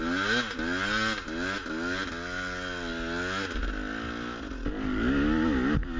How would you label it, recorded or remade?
recorded